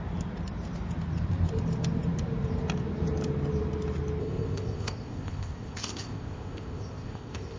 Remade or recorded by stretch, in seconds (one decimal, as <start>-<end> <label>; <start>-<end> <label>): 0.0-4.2 recorded; 4.2-7.6 remade